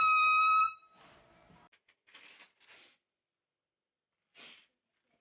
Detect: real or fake real